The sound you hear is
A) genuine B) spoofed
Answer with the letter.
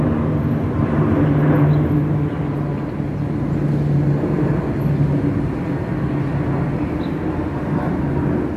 A